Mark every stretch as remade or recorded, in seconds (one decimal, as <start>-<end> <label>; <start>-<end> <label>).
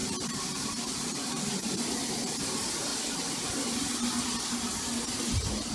0.0-1.4 remade; 1.4-5.7 recorded